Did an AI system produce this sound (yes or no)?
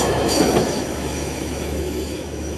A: yes